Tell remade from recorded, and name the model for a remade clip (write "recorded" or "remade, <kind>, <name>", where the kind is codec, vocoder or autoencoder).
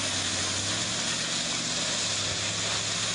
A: recorded